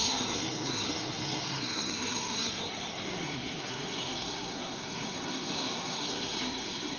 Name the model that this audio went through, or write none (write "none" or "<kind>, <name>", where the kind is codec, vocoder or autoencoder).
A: codec, SNAC